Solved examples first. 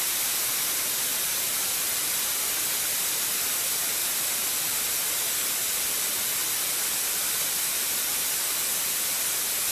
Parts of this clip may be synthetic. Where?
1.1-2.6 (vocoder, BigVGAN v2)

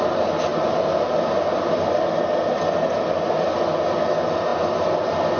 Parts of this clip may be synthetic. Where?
none

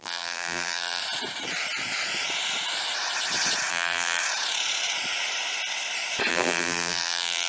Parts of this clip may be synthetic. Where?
0.0-1.0 (vocoder, BigVGAN v2); 3.7-4.2; 6.3-7.5